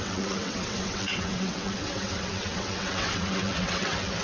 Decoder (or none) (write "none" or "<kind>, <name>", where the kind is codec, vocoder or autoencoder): vocoder, WaveNeXt